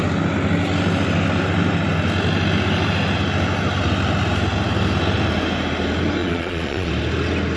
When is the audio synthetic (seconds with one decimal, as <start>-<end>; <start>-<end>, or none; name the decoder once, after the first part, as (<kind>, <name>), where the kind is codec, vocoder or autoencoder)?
6.2-6.9 (vocoder, Vocos)